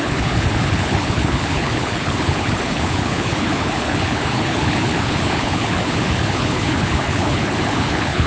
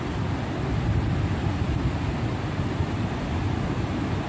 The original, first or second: second